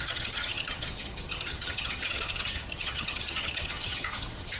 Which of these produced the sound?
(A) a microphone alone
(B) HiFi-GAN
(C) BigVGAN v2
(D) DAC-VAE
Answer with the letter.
B